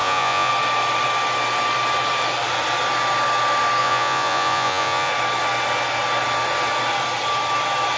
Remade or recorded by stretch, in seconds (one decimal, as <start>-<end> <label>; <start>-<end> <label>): 0.0-0.5 remade; 0.5-3.8 recorded; 3.8-5.1 remade; 5.1-8.0 recorded